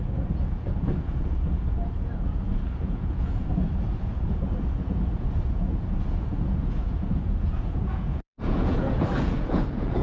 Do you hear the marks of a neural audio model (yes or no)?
yes